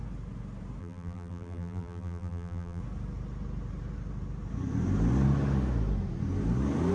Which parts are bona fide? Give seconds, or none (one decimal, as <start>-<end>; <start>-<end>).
0.0-0.8; 2.8-6.9